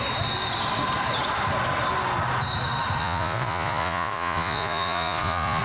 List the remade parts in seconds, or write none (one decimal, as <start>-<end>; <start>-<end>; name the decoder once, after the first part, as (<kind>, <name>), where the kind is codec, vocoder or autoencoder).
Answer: 3.0-5.6 (vocoder, Vocos)